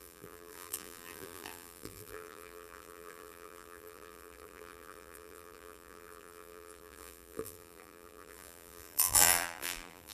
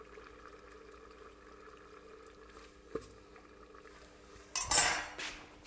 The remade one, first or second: first